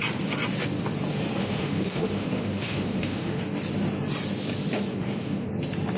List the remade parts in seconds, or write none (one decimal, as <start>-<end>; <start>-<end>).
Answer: 1.4-3.4; 4.9-5.5